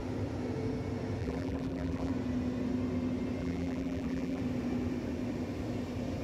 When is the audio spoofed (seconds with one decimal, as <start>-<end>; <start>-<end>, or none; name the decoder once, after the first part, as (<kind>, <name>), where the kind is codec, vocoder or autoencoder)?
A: 1.2-2.1 (vocoder, BigVGAN v2); 3.4-4.4